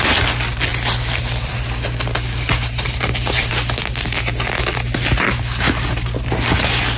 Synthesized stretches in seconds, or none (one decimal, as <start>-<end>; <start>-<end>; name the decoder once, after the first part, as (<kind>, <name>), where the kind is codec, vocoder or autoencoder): 2.7-3.5 (vocoder, BigVGAN v2)